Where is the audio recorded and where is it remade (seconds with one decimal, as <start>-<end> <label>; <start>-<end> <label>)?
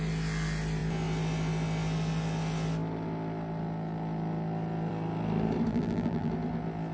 0.0-5.7 recorded; 5.7-6.3 remade; 6.3-6.9 recorded